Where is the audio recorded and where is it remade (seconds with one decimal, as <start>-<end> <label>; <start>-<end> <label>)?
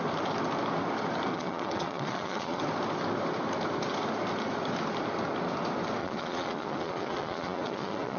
0.0-1.3 recorded; 1.3-2.6 remade; 2.6-6.0 recorded; 6.0-8.2 remade